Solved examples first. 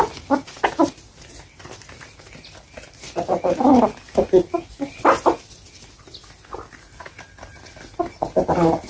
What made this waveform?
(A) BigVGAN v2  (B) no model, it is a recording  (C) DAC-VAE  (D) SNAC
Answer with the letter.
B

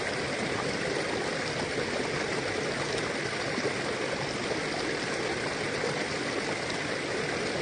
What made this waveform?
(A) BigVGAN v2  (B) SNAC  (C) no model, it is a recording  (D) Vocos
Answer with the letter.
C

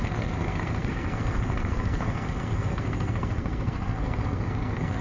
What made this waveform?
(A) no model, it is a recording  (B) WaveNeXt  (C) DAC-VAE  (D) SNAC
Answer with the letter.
D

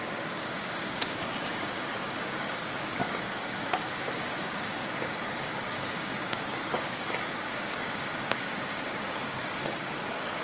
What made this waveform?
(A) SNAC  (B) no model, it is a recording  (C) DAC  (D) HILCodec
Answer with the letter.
C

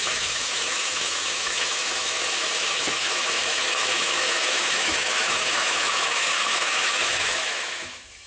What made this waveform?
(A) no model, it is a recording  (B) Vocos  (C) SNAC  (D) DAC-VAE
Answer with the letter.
D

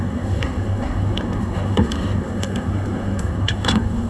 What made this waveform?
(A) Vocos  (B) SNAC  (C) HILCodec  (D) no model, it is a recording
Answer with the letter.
B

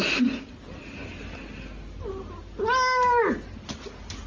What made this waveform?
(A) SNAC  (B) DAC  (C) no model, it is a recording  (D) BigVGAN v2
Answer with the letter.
C